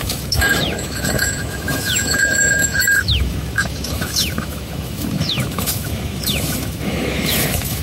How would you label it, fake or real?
fake